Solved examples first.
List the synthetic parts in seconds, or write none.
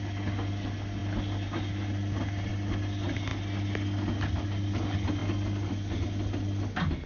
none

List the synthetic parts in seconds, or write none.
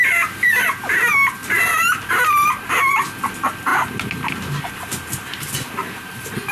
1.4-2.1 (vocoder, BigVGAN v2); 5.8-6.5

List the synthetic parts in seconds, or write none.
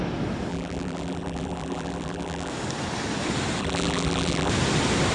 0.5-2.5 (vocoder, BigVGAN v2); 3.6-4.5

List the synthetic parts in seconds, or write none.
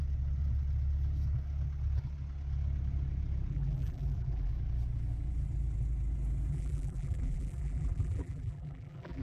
3.5-4.5 (vocoder, BigVGAN v2); 6.5-9.2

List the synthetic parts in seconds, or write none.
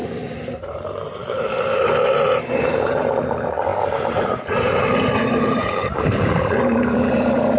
0.6-1.2 (vocoder, BigVGAN v2); 2.6-7.6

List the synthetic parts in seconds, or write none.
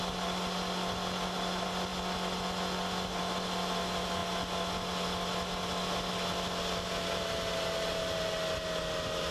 none